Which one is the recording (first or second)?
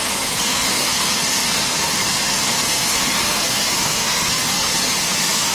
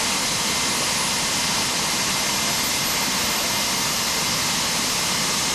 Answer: second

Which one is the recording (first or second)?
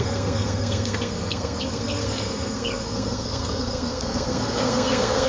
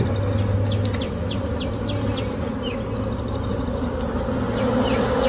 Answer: second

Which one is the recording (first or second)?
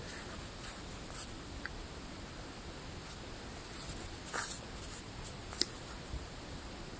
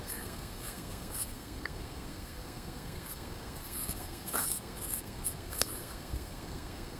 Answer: first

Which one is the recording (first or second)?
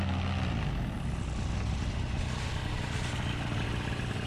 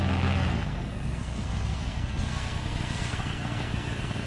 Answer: first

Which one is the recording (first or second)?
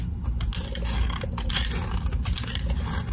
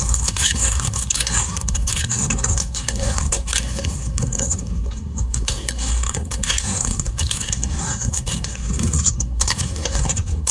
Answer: first